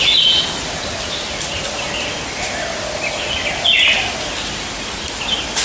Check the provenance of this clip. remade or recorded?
recorded